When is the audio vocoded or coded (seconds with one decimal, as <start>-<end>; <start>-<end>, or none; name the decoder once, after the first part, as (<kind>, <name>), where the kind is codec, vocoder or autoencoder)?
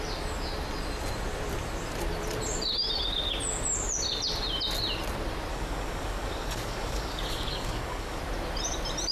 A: 5.5-8.2 (codec, DAC)